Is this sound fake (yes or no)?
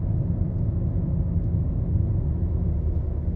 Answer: no